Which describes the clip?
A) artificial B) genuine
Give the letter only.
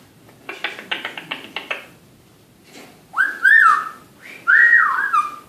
B